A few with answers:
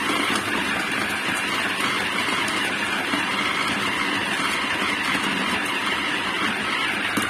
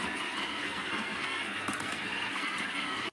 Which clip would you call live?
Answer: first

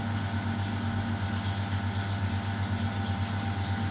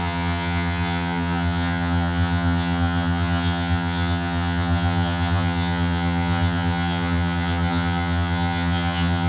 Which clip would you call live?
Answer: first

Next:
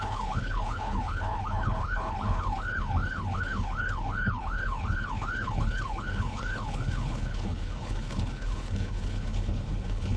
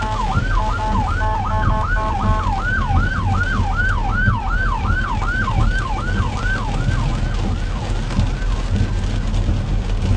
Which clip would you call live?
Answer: second